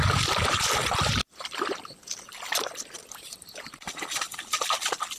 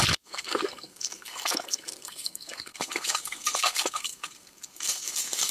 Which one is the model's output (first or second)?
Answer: second